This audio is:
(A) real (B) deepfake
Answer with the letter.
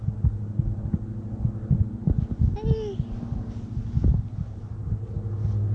A